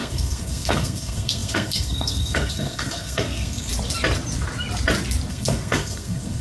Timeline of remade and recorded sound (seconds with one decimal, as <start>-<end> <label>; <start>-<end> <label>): 0.0-3.7 remade; 3.7-5.3 recorded; 5.3-6.4 remade

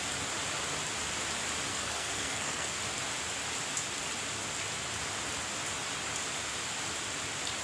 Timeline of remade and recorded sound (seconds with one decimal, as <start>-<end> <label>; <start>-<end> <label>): 0.0-1.7 recorded; 1.7-2.8 remade; 2.8-7.6 recorded

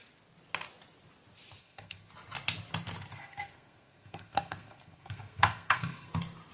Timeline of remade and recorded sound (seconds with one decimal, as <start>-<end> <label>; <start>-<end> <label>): 0.0-1.6 recorded; 1.6-2.1 remade; 2.1-3.1 recorded; 3.1-6.1 remade; 6.1-6.5 recorded

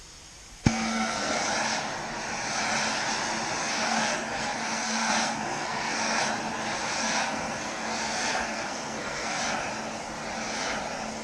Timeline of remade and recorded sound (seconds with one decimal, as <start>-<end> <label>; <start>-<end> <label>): 0.0-0.6 recorded; 0.6-1.5 remade; 1.5-3.6 recorded; 3.6-6.2 remade; 6.2-6.8 recorded; 6.8-9.4 remade; 9.4-11.2 recorded

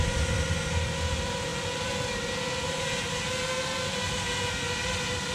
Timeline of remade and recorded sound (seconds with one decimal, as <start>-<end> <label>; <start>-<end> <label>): 0.0-5.3 recorded